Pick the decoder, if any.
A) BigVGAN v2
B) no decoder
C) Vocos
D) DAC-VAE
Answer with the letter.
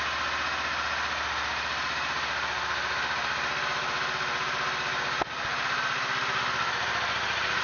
B